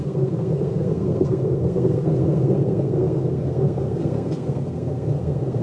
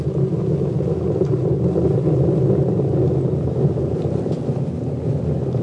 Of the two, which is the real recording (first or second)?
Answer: second